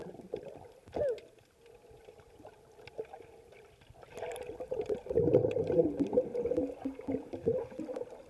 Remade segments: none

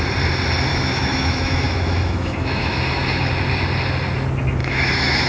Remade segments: 0.7-3.3 (autoencoder, DAC-VAE); 4.6-5.3